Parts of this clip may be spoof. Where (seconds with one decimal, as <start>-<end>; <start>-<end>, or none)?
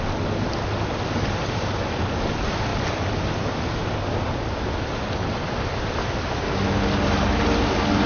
none